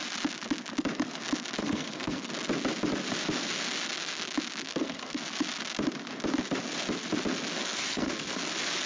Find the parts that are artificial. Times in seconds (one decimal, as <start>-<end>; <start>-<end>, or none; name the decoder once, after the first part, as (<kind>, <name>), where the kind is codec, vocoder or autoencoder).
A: 1.6-2.3 (codec, SNAC); 4.7-5.2; 7.6-8.4